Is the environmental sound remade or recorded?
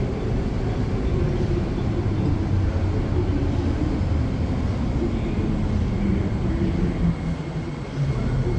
recorded